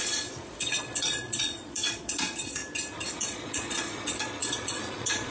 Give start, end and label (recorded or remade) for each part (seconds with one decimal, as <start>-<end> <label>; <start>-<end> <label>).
0.0-2.6 remade; 2.6-3.2 recorded; 3.2-5.3 remade